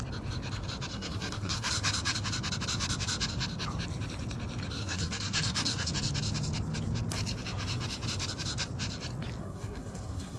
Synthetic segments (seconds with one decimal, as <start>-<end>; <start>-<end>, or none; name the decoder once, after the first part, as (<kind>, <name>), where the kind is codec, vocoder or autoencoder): 0.9-1.7 (codec, SNAC); 4.8-5.9; 9.4-10.4